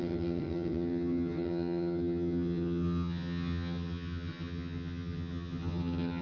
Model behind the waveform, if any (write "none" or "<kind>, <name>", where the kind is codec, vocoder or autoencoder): vocoder, HiFi-GAN